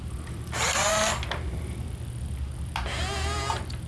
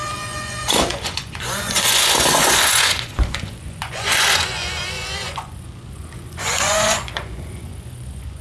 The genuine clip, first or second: first